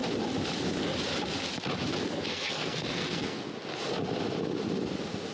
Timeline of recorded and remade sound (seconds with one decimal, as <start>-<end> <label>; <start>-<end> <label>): 0.0-2.3 recorded; 2.3-3.5 remade; 3.5-5.3 recorded